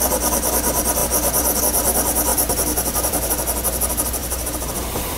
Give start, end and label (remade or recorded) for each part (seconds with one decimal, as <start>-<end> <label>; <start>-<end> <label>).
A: 0.0-2.3 recorded; 2.3-3.3 remade; 3.3-4.2 recorded; 4.2-5.2 remade